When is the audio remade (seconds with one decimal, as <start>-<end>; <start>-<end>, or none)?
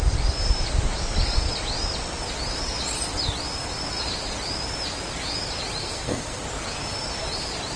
5.8-6.4